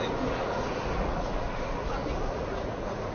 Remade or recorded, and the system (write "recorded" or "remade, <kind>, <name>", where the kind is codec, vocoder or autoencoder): remade, vocoder, Vocos